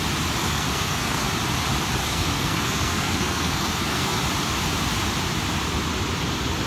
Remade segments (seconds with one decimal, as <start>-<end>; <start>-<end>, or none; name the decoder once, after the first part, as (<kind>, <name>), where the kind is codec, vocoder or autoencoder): 0.4-1.3 (codec, SNAC); 2.0-4.2